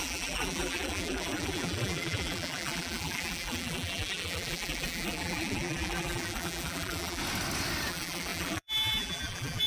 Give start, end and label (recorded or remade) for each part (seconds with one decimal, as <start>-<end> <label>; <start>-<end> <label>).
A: 0.0-7.2 remade; 7.2-7.9 recorded; 7.9-9.7 remade